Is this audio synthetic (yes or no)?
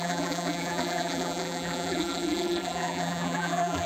yes